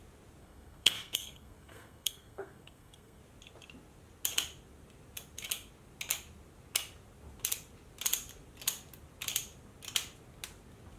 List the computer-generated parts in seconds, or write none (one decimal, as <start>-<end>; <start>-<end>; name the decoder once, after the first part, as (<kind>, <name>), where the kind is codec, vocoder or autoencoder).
0.4-3.2 (codec, SNAC)

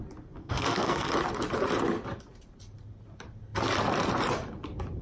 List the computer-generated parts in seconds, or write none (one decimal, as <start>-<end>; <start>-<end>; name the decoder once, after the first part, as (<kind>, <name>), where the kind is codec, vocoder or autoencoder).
0.4-1.1 (codec, SNAC)

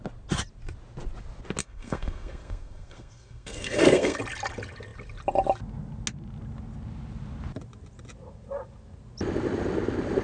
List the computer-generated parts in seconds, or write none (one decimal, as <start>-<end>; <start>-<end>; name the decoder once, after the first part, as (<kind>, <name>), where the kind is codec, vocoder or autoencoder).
1.6-4.2 (codec, SNAC)

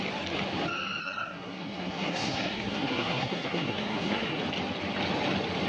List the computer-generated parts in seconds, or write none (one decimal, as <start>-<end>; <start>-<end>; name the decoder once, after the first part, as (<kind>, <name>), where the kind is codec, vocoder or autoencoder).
1.0-4.4 (codec, SNAC)

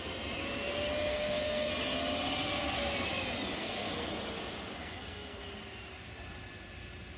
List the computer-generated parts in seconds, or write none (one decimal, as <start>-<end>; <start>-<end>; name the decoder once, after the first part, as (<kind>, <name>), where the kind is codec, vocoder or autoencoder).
1.1-1.7 (codec, SNAC); 3.6-4.1; 4.8-5.4

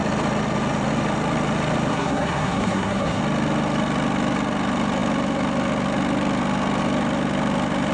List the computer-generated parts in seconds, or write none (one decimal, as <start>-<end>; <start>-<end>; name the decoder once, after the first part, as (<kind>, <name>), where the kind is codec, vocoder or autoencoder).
1.9-3.2 (codec, SNAC)

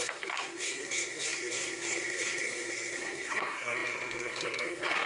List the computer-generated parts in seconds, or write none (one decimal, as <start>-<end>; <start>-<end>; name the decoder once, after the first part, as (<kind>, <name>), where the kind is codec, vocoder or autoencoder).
0.0-5.1 (codec, SNAC)

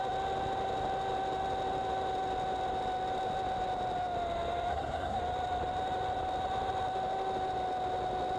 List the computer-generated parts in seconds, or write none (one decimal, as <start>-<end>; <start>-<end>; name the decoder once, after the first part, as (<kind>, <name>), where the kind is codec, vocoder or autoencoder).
4.7-5.2 (codec, SNAC)